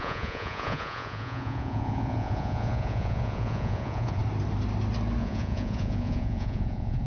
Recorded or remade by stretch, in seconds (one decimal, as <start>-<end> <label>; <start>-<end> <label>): 0.0-4.2 remade; 4.2-5.2 recorded; 5.2-7.1 remade